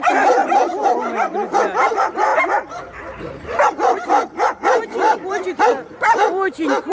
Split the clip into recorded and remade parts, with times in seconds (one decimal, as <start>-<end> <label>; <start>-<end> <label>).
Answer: 0.0-2.3 remade; 2.3-3.2 recorded; 3.2-6.9 remade